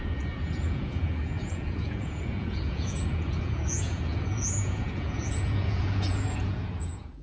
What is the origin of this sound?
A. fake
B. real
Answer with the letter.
A